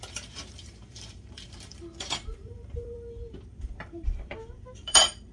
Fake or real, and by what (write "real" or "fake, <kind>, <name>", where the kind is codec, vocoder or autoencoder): fake, vocoder, BigVGAN v2